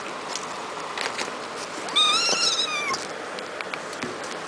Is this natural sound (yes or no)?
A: yes